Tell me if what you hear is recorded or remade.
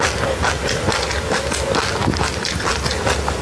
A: recorded